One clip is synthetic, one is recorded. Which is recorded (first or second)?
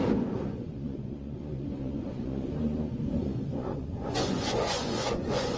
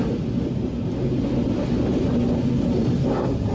second